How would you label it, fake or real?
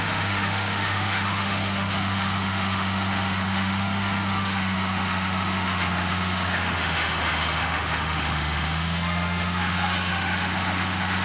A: fake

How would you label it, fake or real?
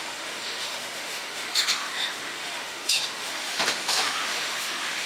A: fake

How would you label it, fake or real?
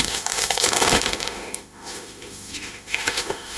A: fake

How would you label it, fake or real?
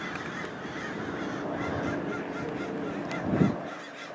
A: real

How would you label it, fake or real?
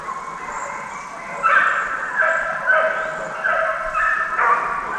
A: real